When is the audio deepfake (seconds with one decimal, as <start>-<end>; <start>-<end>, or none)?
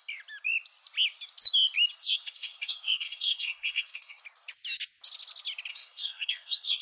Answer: 2.0-4.2; 5.7-6.8